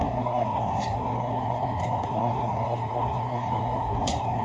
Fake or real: fake